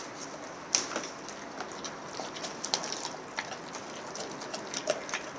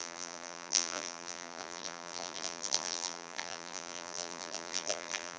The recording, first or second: first